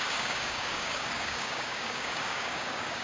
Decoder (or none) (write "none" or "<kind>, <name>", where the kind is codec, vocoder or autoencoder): codec, DAC